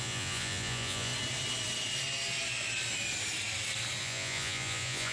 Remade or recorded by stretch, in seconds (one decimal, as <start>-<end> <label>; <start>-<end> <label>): 0.0-1.1 remade; 1.1-4.0 recorded; 4.0-5.1 remade